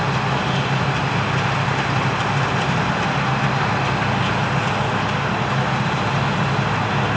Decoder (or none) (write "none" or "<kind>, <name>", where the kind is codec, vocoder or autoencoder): none